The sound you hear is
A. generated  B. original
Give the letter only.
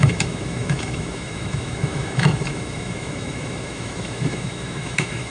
A